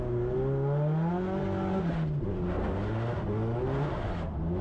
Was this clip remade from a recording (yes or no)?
no